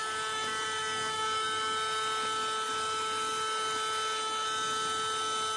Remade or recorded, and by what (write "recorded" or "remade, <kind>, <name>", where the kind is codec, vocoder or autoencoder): recorded